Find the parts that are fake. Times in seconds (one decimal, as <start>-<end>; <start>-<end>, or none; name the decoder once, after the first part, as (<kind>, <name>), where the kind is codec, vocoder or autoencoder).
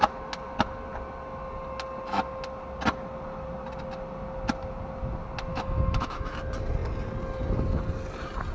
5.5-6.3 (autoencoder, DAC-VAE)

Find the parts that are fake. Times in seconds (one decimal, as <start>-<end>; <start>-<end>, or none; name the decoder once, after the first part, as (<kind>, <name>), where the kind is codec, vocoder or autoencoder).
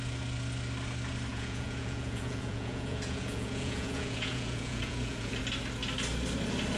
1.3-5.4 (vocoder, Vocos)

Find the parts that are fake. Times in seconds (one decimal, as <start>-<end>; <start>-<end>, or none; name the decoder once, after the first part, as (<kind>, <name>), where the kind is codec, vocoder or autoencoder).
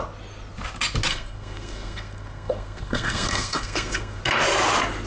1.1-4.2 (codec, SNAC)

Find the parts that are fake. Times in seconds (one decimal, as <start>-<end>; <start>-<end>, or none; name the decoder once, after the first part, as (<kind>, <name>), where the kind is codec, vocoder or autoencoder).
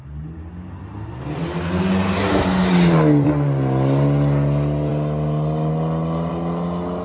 none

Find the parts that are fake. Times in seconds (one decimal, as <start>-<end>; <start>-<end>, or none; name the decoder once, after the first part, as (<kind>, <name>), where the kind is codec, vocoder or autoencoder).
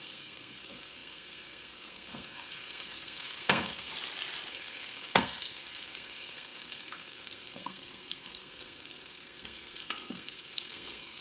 0.0-3.9 (codec, SNAC); 4.5-11.2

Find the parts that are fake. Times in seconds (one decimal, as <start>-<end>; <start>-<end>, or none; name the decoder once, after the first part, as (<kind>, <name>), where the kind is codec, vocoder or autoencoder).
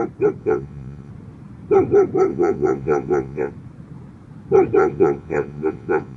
0.4-1.1 (vocoder, Vocos); 2.3-3.5; 4.8-6.2